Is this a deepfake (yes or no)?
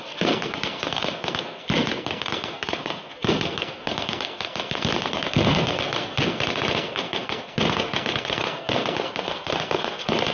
yes